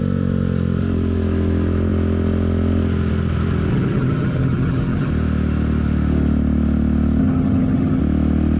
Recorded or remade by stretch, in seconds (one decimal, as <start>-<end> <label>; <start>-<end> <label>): 0.0-3.7 recorded; 3.7-5.1 remade; 5.1-7.2 recorded; 7.2-8.0 remade; 8.0-8.6 recorded